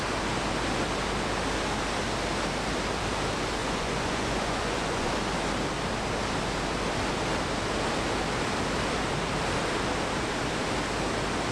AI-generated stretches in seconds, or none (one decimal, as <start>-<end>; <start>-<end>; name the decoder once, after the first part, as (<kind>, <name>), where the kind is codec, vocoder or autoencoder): 3.6-5.1 (vocoder, Vocos)